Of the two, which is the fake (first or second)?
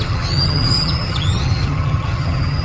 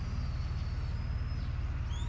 first